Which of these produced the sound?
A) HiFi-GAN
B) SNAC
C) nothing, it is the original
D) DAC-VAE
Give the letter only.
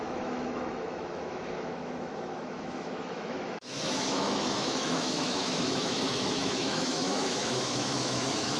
D